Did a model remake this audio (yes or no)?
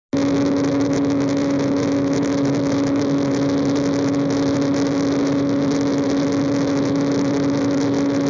no